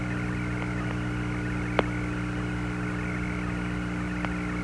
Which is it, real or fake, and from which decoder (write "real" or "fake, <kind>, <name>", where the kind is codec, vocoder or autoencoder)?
real